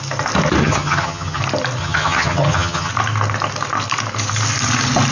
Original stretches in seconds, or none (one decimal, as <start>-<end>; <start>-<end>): 0.0-0.6; 1.4-1.8; 2.9-5.1